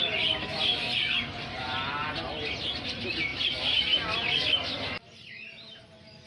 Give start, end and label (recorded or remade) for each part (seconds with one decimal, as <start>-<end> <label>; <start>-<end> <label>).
0.0-3.3 recorded; 3.3-5.8 remade; 5.8-6.3 recorded